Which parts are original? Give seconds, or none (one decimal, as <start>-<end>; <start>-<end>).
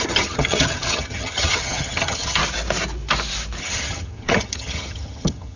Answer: 2.4-3.6